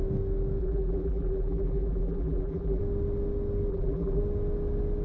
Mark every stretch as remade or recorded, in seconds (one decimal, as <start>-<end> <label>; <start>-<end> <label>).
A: 0.0-0.6 recorded; 0.6-2.8 remade; 2.8-3.7 recorded; 3.7-4.2 remade; 4.2-5.0 recorded